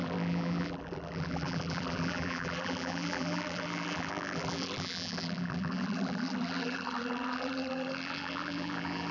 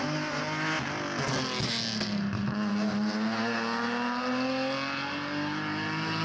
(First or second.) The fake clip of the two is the first